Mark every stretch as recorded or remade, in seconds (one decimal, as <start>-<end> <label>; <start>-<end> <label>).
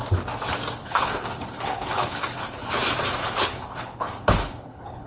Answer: 0.0-0.8 recorded; 0.8-2.8 remade; 2.8-3.2 recorded; 3.2-5.1 remade